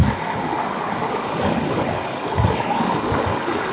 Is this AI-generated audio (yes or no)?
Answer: yes